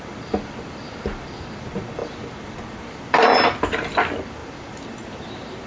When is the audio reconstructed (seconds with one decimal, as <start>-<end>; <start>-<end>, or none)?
0.0-5.7